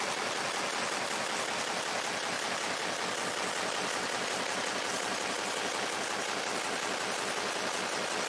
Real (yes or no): yes